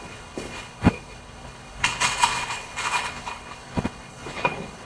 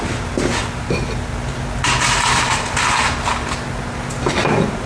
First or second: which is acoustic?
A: second